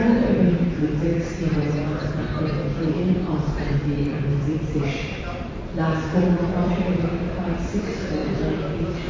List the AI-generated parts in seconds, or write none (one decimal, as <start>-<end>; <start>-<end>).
0.5-1.1; 2.9-9.1